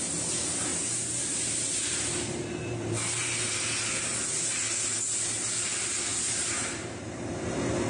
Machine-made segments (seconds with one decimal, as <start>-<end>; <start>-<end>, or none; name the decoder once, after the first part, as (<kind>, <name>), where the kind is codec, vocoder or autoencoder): 0.7-3.5 (vocoder, BigVGAN v2); 6.1-7.3